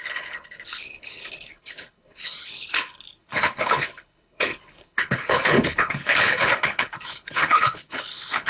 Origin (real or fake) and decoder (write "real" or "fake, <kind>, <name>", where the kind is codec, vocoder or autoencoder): fake, codec, HILCodec